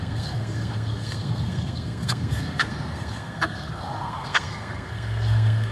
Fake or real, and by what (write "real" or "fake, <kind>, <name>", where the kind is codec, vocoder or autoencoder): fake, codec, SNAC